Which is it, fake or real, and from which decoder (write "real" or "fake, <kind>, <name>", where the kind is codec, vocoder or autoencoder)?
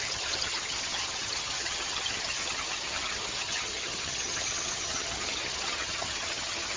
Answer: fake, vocoder, HiFi-GAN